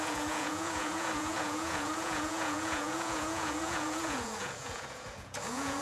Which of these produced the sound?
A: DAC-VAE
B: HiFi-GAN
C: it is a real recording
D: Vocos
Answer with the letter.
D